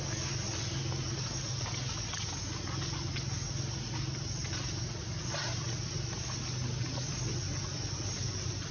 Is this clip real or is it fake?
real